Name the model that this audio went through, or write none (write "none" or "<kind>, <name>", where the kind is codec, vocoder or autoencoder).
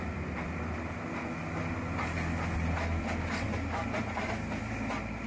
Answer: none